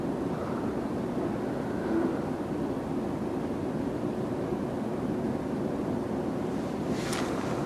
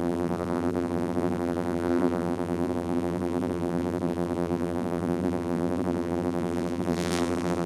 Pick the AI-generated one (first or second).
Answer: second